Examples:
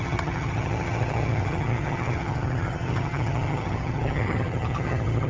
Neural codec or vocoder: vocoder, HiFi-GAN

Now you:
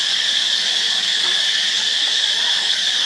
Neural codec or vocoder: codec, DAC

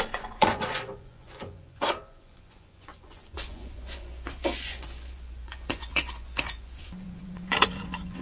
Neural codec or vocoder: vocoder, Vocos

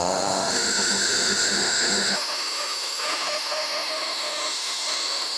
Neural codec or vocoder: autoencoder, DAC-VAE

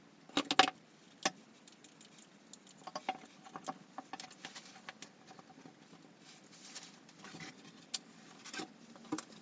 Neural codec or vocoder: none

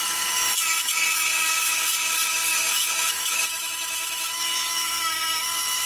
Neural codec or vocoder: autoencoder, DAC-VAE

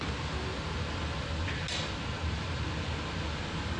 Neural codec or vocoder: none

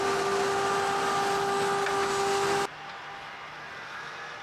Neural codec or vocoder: none